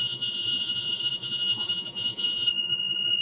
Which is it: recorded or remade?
remade